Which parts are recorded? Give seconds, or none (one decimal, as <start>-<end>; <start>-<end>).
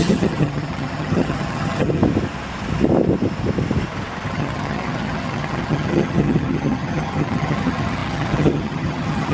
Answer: 2.0-4.3